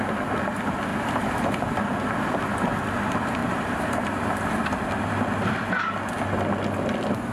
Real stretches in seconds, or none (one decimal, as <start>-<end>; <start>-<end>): 0.0-0.9; 2.3-3.4; 4.9-7.3